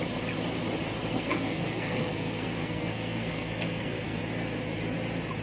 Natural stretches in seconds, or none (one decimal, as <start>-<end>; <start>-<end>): 0.0-1.0; 4.2-5.4